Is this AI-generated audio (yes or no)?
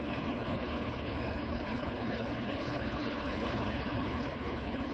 yes